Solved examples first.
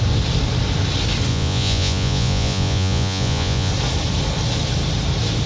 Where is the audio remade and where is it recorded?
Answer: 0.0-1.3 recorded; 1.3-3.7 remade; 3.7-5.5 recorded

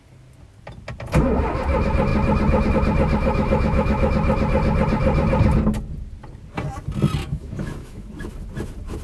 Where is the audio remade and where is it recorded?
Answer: 0.0-3.2 recorded; 3.2-4.1 remade; 4.1-7.2 recorded; 7.2-8.1 remade; 8.1-9.0 recorded

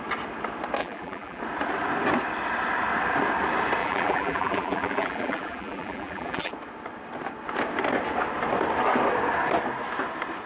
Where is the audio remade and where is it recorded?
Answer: 0.0-0.8 recorded; 0.8-1.4 remade; 1.4-3.8 recorded; 3.8-6.5 remade; 6.5-10.5 recorded

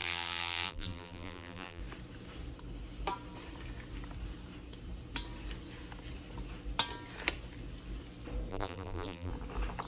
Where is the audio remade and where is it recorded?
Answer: 0.0-1.8 remade; 1.8-8.5 recorded; 8.5-9.3 remade; 9.3-9.9 recorded

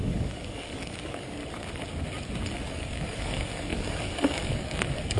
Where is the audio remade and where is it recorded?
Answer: 0.0-1.4 remade; 1.4-2.7 recorded; 2.7-5.2 remade

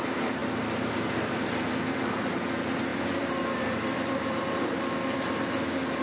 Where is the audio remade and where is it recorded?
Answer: 0.0-0.4 remade; 0.4-0.9 recorded; 0.9-6.0 remade